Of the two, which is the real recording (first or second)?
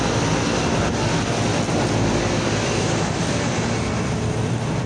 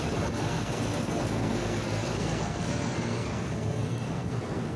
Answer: first